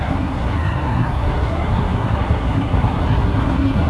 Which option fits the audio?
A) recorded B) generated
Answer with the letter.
B